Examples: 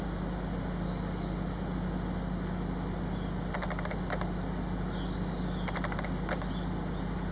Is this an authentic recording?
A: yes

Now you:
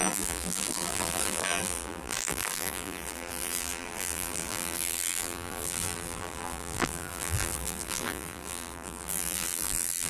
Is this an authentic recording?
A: no